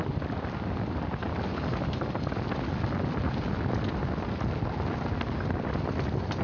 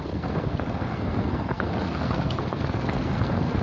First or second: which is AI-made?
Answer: second